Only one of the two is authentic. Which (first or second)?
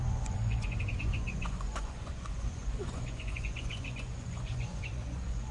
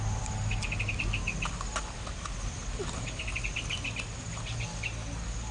second